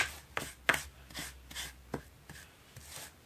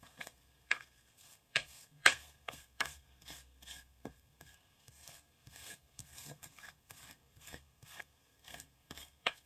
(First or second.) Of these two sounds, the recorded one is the first